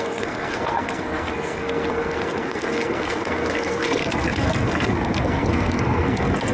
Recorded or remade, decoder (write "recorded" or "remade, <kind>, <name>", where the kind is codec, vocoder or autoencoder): remade, codec, SNAC